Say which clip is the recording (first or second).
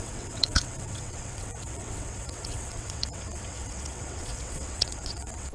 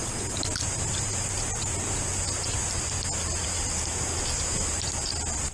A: second